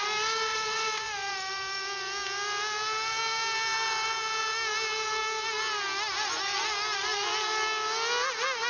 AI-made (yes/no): no